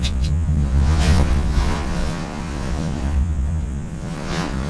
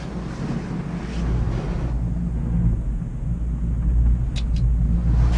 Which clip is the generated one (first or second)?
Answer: first